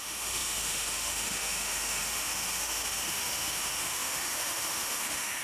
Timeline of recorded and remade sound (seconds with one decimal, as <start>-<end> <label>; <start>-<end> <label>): 0.0-5.4 remade